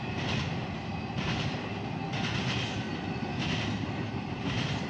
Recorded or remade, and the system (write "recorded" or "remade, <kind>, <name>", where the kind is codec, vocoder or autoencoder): recorded